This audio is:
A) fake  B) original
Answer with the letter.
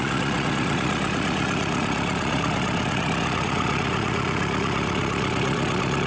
A